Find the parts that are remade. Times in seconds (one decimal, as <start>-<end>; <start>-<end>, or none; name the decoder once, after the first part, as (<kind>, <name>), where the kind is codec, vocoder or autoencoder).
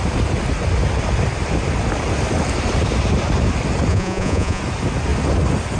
3.9-4.6 (vocoder, Vocos)